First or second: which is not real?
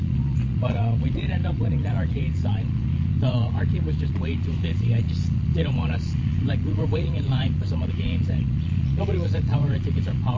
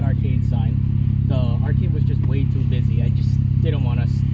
first